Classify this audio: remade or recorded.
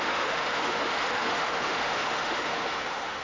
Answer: remade